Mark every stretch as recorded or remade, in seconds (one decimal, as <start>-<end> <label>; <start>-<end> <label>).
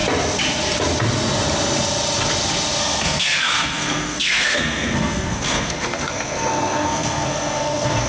0.0-2.8 recorded; 2.8-8.1 remade